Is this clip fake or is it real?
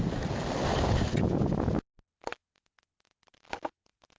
real